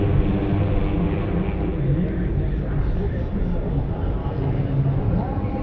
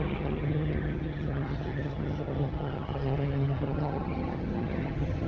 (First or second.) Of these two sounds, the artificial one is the second